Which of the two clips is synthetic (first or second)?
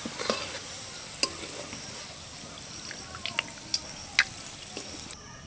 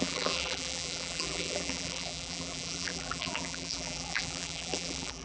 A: second